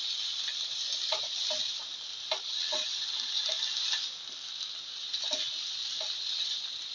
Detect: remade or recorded recorded